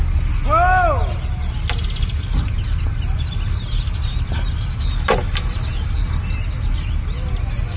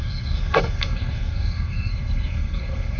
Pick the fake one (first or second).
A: second